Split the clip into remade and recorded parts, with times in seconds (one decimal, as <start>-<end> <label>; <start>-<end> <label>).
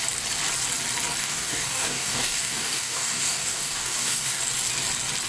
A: 0.0-1.2 recorded; 1.2-4.4 remade; 4.4-5.3 recorded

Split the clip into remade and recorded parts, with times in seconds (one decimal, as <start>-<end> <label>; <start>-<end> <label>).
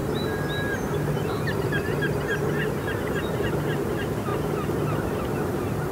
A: 0.0-5.9 recorded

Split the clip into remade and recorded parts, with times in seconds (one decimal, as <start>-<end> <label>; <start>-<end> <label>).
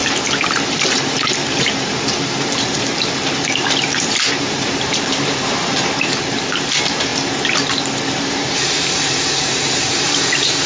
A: 0.0-0.7 recorded; 0.7-7.1 remade; 7.1-8.1 recorded; 8.1-10.7 remade